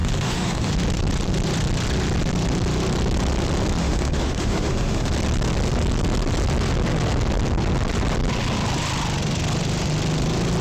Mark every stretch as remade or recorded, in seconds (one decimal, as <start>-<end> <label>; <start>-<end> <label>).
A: 0.0-0.7 remade; 0.7-3.8 recorded; 3.8-5.1 remade; 5.1-10.6 recorded